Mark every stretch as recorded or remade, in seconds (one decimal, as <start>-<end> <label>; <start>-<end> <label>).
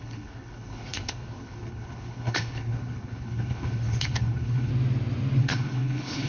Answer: 0.0-4.7 remade; 4.7-5.4 recorded; 5.4-6.3 remade